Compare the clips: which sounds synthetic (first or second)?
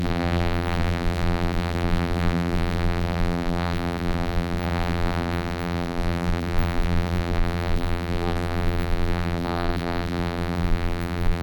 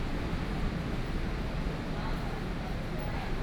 first